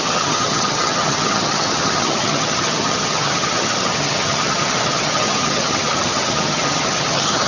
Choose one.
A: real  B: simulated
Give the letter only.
B